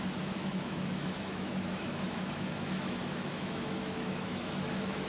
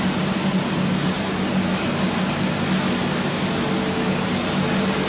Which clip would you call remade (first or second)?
first